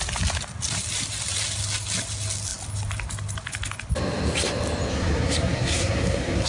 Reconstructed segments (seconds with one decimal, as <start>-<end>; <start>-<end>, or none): 4.9-6.5

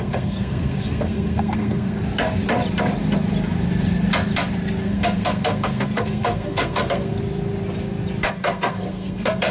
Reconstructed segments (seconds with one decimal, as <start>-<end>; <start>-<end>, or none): 0.0-2.0; 4.8-7.1; 8.3-9.5